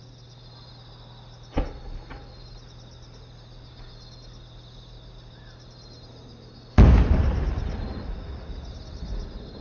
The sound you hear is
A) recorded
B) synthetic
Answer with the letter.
A